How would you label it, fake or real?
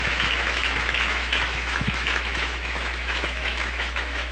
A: fake